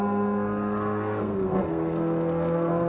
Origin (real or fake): fake